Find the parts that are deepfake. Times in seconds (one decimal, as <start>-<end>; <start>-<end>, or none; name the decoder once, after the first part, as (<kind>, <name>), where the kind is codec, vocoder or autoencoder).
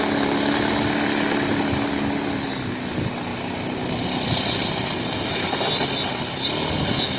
none